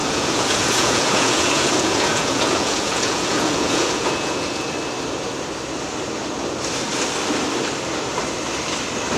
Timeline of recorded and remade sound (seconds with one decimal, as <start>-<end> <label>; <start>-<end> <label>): 0.0-4.7 remade; 4.7-9.2 recorded